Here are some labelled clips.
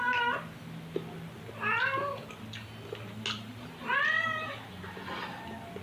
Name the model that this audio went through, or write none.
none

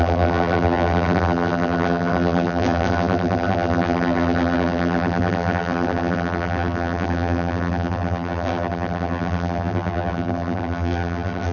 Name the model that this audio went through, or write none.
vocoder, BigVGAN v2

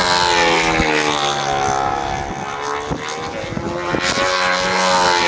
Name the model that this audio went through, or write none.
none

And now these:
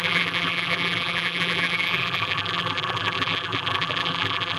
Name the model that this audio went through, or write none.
vocoder, BigVGAN v2